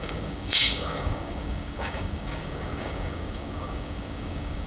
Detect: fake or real fake